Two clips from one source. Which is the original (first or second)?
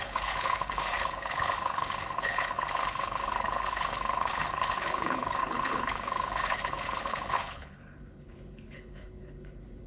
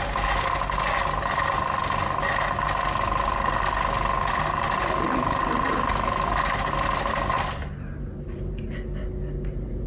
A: second